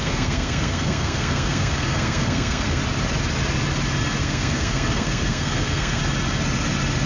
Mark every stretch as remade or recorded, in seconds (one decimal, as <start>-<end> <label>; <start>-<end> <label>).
0.0-2.8 remade; 2.8-4.2 recorded; 4.2-6.0 remade; 6.0-7.1 recorded